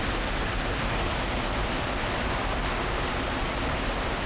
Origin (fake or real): real